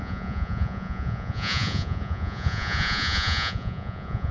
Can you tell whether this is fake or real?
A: fake